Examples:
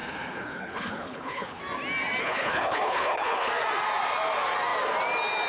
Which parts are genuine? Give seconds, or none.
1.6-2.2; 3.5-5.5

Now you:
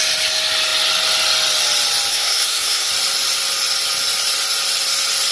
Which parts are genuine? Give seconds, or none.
0.0-2.1; 2.9-5.3

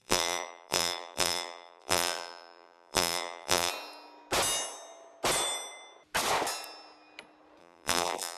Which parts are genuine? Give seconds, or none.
3.7-7.6

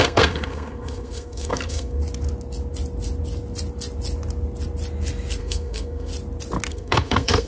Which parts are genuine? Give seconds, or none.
2.0-5.4; 6.1-6.7

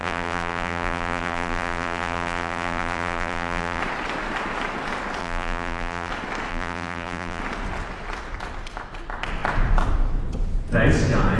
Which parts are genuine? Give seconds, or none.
3.8-5.2; 6.1-6.5; 7.4-11.4